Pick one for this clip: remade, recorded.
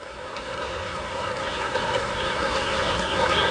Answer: remade